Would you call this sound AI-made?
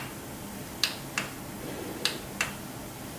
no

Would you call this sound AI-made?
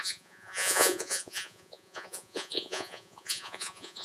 yes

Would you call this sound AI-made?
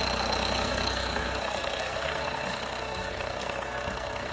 yes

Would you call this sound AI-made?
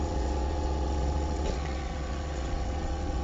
yes